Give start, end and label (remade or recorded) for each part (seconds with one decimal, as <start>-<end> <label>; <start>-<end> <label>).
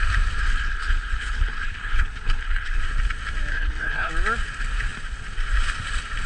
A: 0.0-0.4 recorded; 0.4-2.8 remade; 2.8-3.5 recorded; 3.5-4.1 remade; 4.1-6.3 recorded